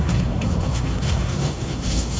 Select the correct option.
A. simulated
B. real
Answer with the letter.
A